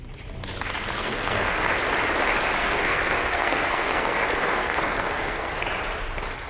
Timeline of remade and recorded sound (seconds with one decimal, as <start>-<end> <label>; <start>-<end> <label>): 0.0-1.0 recorded; 1.0-1.7 remade; 1.7-2.6 recorded; 2.6-5.5 remade; 5.5-6.5 recorded